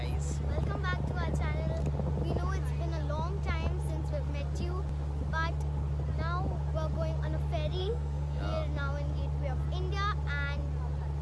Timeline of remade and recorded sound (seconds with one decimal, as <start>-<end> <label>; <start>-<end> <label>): 0.0-7.8 recorded; 7.8-8.4 remade; 8.4-11.2 recorded